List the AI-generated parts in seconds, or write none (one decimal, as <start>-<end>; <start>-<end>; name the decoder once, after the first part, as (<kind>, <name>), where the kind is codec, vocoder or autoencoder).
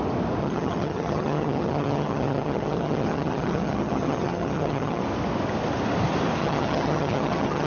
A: 0.4-5.0 (vocoder, HiFi-GAN); 6.4-7.7